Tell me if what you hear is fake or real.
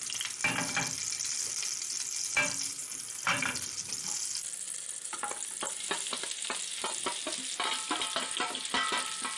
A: real